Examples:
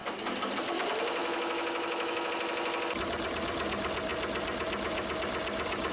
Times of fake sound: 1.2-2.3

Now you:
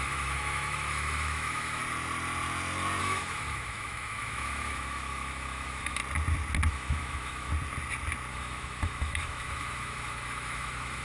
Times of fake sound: 0.0-1.8; 3.0-6.0; 6.7-7.5; 8.3-11.0

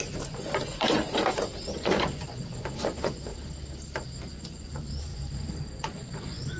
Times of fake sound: 0.0-1.0; 1.8-3.3; 4.3-6.6

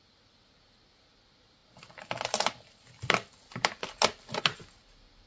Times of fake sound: none

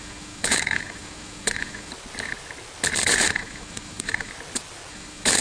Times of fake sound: 0.0-1.9; 3.0-4.3; 4.9-5.4